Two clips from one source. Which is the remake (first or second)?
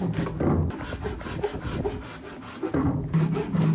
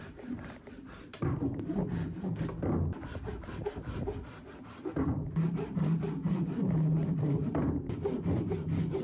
second